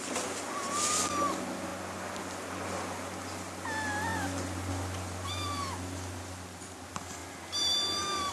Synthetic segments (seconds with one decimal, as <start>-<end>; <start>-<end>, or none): 0.0-1.7; 2.2-4.1; 4.7-8.3